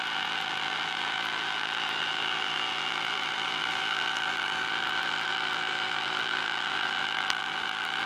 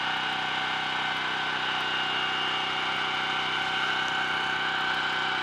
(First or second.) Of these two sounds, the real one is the second